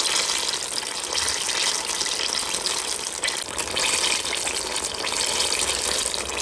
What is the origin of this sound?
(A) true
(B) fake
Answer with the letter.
A